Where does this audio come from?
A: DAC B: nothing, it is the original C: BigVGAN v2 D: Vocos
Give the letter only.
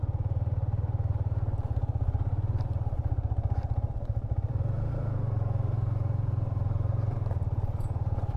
C